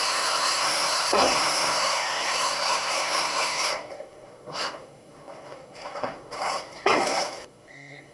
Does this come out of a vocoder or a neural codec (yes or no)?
yes